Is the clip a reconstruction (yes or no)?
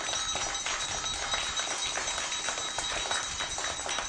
no